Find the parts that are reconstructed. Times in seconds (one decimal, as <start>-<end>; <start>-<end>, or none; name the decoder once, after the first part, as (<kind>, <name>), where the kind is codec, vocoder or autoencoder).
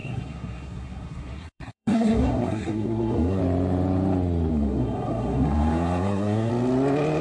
0.0-3.4 (codec, SNAC); 4.5-6.5